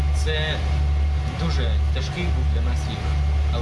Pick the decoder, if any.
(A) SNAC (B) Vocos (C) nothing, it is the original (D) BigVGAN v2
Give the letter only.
C